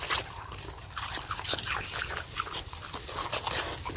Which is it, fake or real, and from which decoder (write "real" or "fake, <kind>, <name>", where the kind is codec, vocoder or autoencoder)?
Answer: real